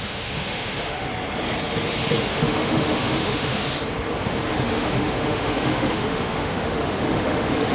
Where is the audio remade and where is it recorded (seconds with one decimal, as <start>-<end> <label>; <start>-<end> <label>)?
0.0-1.1 remade; 1.1-2.2 recorded; 2.2-3.6 remade; 3.6-4.5 recorded; 4.5-7.7 remade